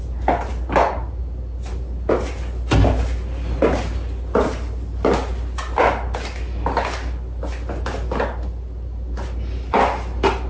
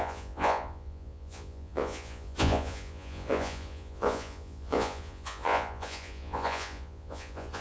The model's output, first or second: second